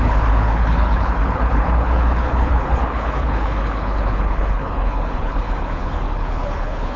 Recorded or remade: remade